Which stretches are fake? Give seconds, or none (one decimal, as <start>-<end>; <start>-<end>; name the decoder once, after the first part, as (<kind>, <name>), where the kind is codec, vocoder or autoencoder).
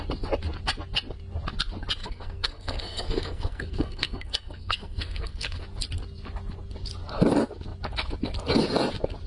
2.0-5.6 (codec, SNAC)